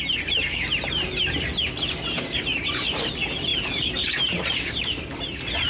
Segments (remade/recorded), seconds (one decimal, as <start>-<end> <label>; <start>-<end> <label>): 0.0-5.7 recorded